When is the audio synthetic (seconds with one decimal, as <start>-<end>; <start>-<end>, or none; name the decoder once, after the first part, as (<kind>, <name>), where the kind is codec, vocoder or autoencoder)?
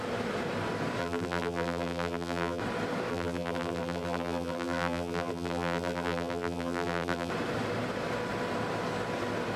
1.0-2.6 (vocoder, BigVGAN v2); 3.1-7.3